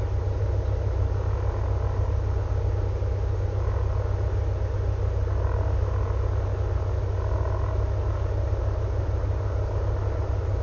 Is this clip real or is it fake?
real